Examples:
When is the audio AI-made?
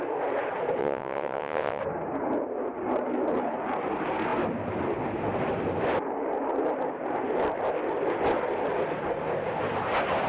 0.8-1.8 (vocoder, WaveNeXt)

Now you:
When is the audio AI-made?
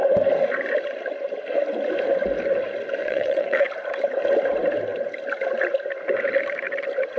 3.0-3.6 (vocoder, WaveNeXt)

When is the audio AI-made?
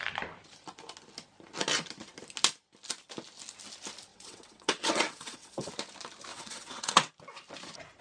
4.1-5.7 (vocoder, WaveNeXt); 6.3-7.1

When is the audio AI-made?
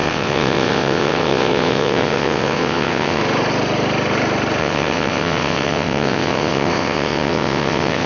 0.0-3.2 (vocoder, WaveNeXt); 4.6-8.1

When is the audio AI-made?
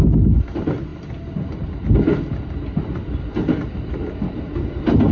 none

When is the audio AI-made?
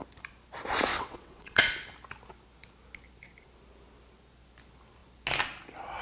0.9-1.6 (vocoder, WaveNeXt)